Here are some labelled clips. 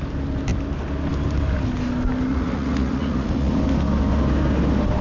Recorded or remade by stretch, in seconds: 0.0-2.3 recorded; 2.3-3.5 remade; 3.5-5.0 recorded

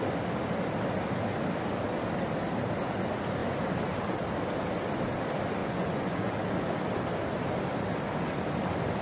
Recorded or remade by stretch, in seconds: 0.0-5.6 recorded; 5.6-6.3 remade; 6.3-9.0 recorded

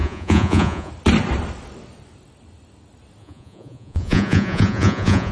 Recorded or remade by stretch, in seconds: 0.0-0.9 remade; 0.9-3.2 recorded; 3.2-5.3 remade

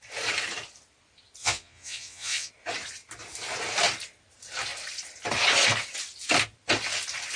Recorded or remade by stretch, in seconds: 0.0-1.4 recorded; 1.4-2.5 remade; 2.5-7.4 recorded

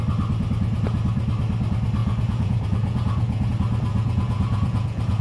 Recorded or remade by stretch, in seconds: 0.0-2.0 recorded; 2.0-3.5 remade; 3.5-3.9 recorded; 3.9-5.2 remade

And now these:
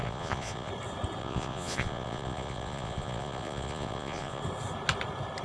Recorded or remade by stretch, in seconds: 0.0-0.7 remade; 0.7-1.2 recorded; 1.2-4.4 remade; 4.4-5.4 recorded